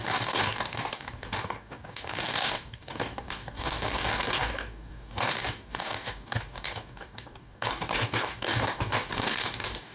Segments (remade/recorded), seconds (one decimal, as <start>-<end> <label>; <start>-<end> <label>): 0.0-9.9 remade